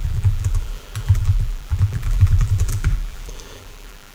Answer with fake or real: fake